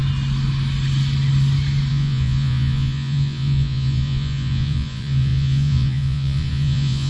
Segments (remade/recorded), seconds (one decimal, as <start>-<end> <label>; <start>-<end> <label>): 0.0-1.9 recorded; 1.9-7.1 remade